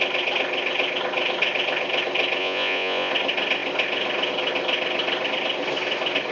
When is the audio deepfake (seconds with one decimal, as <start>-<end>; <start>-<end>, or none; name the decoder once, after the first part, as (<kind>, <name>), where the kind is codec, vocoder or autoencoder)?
2.4-3.1 (vocoder, Vocos)